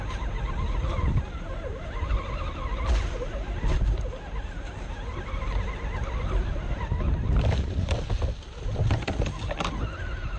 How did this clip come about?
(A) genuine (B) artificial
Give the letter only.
A